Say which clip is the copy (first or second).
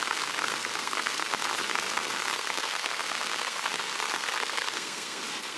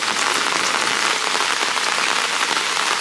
first